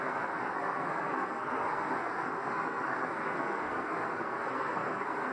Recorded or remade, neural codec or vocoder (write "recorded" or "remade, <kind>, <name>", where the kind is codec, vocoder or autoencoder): remade, codec, SNAC